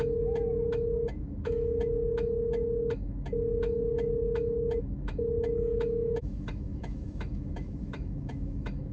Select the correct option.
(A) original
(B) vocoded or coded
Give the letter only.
B